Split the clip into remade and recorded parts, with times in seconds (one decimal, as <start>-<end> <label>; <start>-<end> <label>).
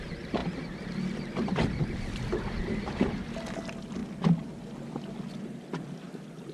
0.0-6.5 recorded